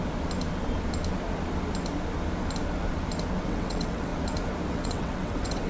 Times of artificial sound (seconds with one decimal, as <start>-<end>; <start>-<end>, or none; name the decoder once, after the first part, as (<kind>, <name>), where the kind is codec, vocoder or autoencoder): 3.4-4.1 (vocoder, WaveNeXt); 4.7-5.7